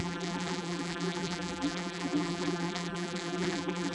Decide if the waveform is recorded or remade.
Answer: remade